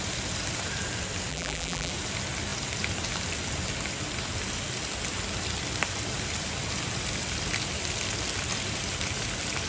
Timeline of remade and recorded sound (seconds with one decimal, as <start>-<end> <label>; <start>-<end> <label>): 0.0-1.3 recorded; 1.3-1.9 remade; 1.9-9.7 recorded